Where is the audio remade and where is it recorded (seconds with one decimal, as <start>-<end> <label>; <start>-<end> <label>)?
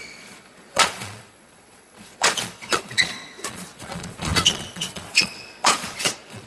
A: 0.0-6.5 remade